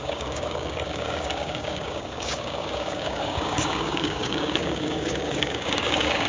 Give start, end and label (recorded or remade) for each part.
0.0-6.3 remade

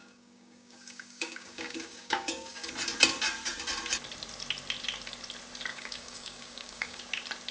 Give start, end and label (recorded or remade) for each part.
0.0-2.7 remade; 2.7-5.7 recorded; 5.7-7.0 remade; 7.0-7.5 recorded